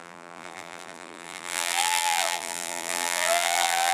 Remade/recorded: remade